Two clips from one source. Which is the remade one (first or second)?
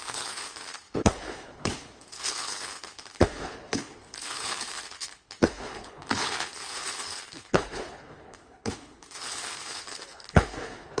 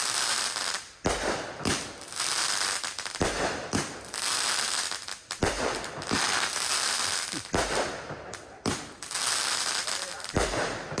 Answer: first